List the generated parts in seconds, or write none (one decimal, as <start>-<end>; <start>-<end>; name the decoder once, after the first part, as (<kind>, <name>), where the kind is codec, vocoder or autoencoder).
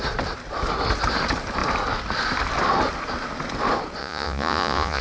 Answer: 4.0-5.0 (vocoder, Vocos)